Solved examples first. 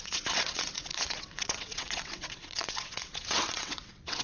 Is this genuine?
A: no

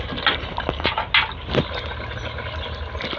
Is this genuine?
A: yes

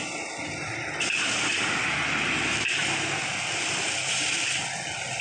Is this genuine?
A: yes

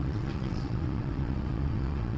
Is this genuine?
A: no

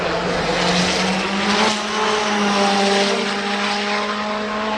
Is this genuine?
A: yes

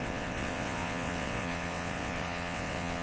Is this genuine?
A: no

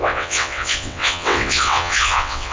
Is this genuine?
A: no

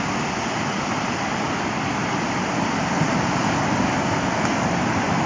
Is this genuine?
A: yes